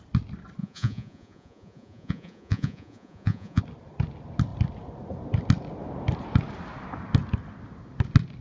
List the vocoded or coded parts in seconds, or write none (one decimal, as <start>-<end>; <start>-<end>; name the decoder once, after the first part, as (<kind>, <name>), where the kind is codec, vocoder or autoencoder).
0.6-3.6 (vocoder, Vocos)